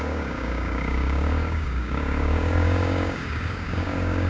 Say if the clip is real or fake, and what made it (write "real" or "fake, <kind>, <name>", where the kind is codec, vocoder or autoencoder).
fake, codec, DAC